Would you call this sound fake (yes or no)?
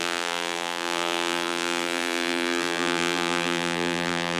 yes